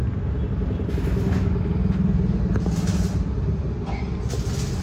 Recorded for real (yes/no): yes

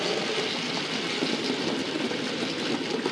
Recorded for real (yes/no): yes